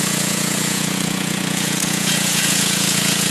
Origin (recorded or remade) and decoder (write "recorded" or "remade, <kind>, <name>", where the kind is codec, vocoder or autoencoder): remade, vocoder, Vocos